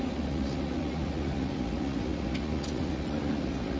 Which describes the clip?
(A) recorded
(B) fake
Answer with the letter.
B